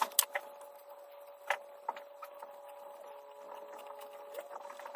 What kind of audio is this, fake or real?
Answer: real